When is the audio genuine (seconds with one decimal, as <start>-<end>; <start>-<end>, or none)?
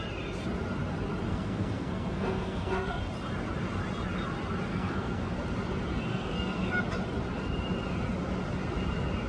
0.0-1.3; 3.0-4.7; 5.3-6.1; 6.7-9.3